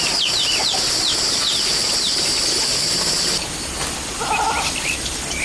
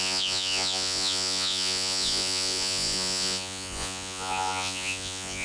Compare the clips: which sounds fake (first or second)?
second